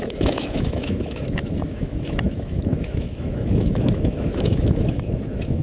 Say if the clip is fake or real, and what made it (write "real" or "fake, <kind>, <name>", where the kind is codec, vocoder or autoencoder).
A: fake, autoencoder, DAC-VAE